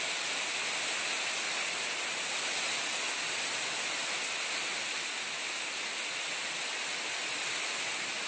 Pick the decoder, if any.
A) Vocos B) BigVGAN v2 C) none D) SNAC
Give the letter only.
C